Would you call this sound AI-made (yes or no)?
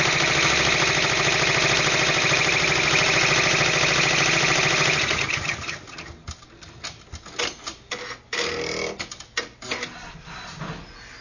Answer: no